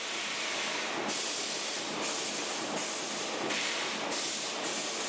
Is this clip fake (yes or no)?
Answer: no